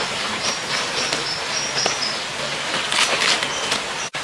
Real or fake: real